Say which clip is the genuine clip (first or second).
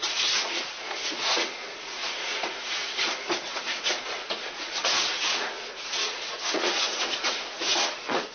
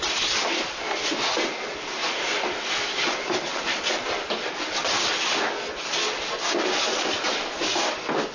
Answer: second